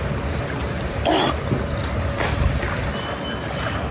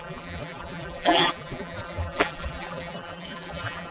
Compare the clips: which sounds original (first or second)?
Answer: first